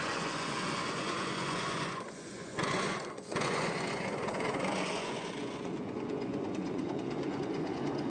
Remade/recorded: remade